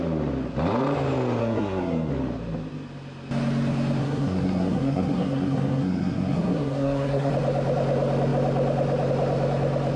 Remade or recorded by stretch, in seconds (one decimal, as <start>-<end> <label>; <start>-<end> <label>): 0.0-1.4 recorded; 1.4-2.1 remade; 2.1-4.0 recorded; 4.0-7.3 remade; 7.3-10.0 recorded